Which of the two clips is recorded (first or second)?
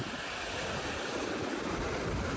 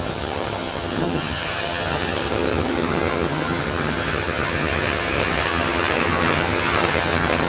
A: first